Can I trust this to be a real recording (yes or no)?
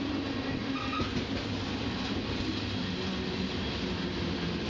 yes